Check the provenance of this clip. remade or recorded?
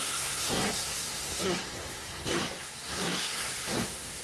remade